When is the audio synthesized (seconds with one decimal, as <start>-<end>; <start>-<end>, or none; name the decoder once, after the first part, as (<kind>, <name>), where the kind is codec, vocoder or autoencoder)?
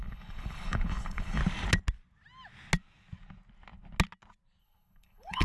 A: 0.0-1.4 (codec, HILCodec); 4.6-5.4